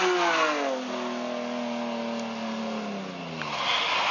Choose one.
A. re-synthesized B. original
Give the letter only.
B